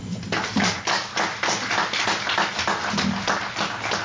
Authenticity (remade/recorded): recorded